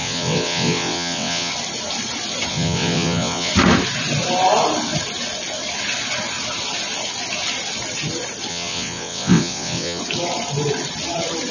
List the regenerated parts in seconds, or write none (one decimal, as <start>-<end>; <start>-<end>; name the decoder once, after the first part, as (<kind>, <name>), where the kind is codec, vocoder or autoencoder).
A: 0.0-1.5 (vocoder, WaveNeXt); 2.5-3.5; 8.5-10.0